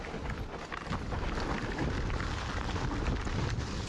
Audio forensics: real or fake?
real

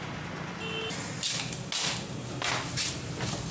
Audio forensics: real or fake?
real